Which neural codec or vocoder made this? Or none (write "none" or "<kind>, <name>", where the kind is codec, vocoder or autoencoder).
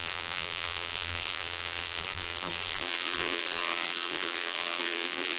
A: vocoder, BigVGAN v2